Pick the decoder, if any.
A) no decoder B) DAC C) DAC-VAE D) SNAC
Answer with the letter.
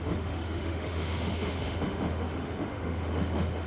C